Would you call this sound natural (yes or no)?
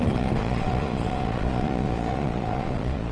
no